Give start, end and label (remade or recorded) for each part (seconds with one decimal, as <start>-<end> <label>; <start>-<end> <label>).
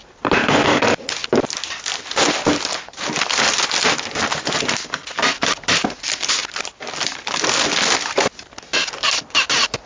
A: 0.0-9.9 recorded